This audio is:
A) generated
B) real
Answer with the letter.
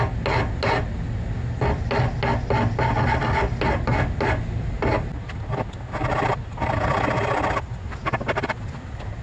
B